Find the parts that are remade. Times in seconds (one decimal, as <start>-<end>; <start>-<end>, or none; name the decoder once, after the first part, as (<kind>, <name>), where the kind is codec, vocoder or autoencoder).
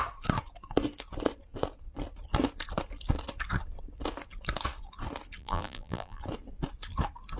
5.4-6.2 (vocoder, BigVGAN v2)